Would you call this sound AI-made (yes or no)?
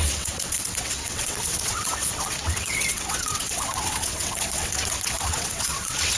yes